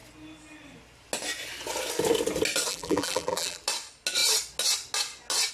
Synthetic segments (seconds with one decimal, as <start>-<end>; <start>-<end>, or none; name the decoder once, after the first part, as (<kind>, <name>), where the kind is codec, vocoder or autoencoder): 2.7-3.6 (vocoder, BigVGAN v2)